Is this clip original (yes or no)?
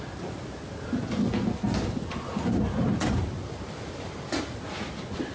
yes